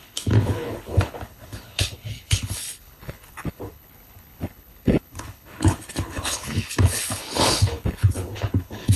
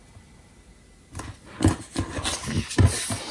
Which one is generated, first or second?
first